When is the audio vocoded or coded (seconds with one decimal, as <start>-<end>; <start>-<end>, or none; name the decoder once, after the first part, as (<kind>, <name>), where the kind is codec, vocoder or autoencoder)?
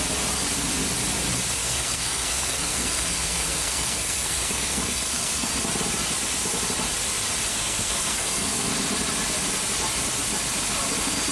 1.6-5.5 (codec, SNAC); 7.5-8.7